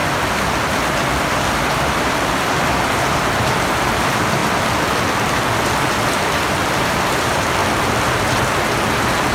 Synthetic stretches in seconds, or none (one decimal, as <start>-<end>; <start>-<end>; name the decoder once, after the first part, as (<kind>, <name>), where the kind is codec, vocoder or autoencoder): 3.9-4.4 (vocoder, BigVGAN v2); 6.8-7.6